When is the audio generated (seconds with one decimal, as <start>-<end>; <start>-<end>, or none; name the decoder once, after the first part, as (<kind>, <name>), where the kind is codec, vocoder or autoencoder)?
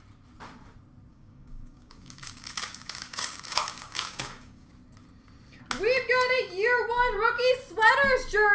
1.1-4.7 (codec, DAC)